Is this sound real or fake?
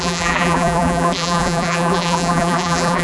fake